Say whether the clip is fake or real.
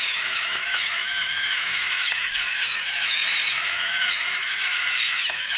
fake